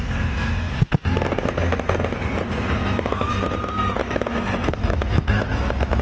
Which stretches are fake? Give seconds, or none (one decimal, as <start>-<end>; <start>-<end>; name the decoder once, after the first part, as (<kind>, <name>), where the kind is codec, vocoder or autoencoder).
2.8-3.3 (autoencoder, DAC-VAE); 4.0-6.0